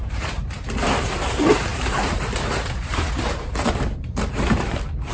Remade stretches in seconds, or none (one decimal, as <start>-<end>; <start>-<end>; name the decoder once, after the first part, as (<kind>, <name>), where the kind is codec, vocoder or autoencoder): 0.0-5.1 (vocoder, BigVGAN v2)